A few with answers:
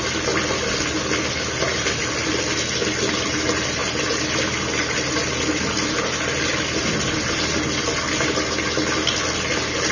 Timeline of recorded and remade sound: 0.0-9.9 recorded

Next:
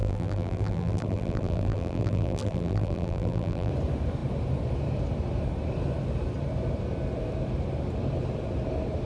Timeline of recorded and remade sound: 0.0-3.7 remade; 3.7-9.1 recorded